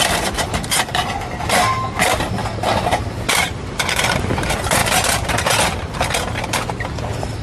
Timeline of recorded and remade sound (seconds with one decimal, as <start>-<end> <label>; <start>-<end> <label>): 0.0-7.4 remade

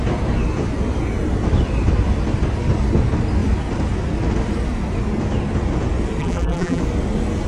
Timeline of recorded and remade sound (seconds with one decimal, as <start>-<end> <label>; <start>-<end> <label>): 0.0-6.2 recorded; 6.2-6.8 remade; 6.8-7.5 recorded

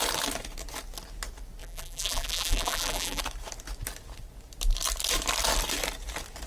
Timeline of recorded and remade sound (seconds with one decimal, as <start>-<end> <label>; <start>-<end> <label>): 0.0-1.6 recorded; 1.6-3.2 remade; 3.2-6.5 recorded

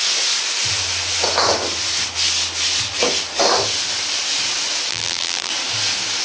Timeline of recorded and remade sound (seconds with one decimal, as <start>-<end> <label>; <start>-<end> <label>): 0.0-4.9 recorded; 4.9-5.5 remade; 5.5-6.2 recorded

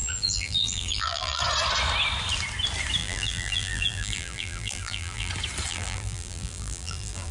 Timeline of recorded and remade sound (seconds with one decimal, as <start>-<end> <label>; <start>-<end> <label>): 0.0-1.4 remade; 1.4-3.0 recorded; 3.0-5.3 remade; 5.3-5.7 recorded; 5.7-7.3 remade